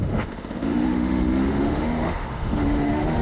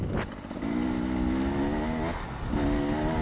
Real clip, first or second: second